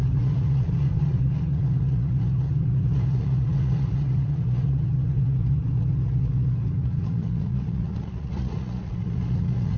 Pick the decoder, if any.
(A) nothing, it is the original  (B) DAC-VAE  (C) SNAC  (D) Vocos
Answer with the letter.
D